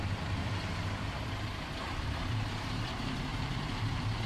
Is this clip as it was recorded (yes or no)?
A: no